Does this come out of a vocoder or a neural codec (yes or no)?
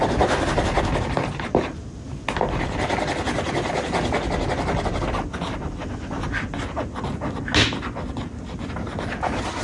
no